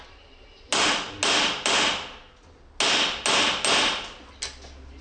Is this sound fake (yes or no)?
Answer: no